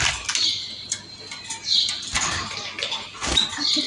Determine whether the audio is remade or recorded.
recorded